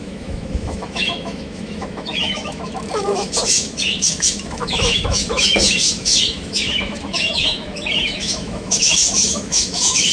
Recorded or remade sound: remade